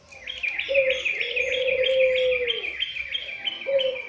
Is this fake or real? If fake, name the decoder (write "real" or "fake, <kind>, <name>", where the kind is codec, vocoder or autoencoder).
real